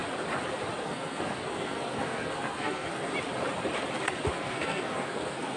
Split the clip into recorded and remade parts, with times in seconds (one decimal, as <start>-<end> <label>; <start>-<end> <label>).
0.0-0.8 recorded; 0.8-3.1 remade; 3.1-4.3 recorded; 4.3-5.6 remade